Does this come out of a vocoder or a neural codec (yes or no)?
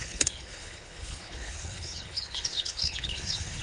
yes